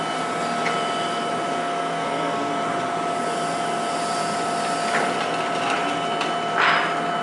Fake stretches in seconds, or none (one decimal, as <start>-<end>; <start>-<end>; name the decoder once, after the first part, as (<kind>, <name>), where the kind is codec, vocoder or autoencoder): 1.6-2.5 (codec, SNAC)